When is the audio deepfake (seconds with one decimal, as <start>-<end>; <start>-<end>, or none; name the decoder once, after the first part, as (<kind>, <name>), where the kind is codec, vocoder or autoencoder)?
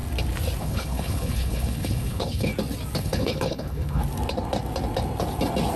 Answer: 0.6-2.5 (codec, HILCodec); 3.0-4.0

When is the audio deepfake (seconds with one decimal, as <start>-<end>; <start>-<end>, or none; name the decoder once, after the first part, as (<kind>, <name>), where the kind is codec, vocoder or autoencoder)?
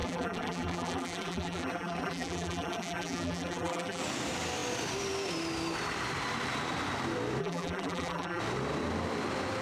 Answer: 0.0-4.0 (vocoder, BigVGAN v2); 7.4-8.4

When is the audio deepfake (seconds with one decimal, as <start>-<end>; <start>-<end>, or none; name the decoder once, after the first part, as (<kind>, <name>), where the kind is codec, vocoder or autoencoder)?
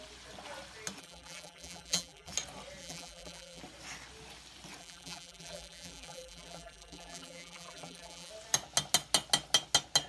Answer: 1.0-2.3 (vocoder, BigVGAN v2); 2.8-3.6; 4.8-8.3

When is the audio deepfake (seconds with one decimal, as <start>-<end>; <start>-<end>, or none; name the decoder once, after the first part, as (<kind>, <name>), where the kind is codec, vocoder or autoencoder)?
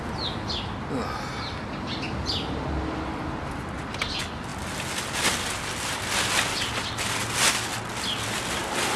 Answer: none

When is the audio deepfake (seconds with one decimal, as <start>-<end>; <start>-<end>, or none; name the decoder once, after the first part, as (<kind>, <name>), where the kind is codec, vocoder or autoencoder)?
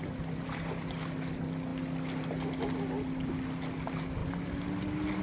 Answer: none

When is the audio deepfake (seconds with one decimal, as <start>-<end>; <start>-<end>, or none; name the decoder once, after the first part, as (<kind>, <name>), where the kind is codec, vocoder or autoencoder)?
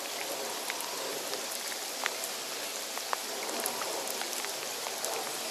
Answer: 1.1-2.6 (vocoder, BigVGAN v2); 3.2-5.5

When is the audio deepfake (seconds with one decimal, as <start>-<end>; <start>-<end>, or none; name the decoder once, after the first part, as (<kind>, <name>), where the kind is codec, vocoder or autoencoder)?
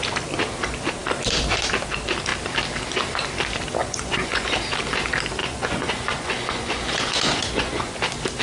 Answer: 3.8-4.5 (vocoder, Vocos); 5.4-8.0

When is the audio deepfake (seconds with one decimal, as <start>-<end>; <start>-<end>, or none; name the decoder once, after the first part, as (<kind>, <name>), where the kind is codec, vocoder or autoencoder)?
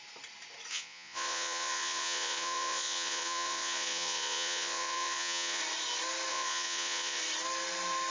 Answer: 0.7-5.6 (vocoder, Vocos); 6.3-7.2